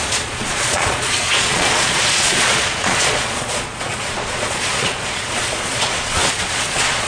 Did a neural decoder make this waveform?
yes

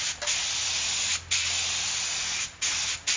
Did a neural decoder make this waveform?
no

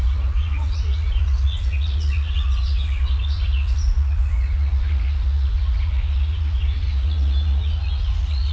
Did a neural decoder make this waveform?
yes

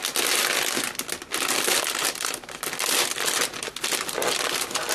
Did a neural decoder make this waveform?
no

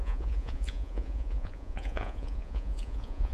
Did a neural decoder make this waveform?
yes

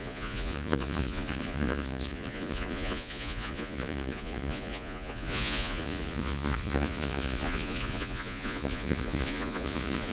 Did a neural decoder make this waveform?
yes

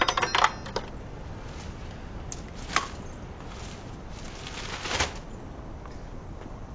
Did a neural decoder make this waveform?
no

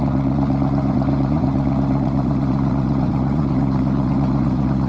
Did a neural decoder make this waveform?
yes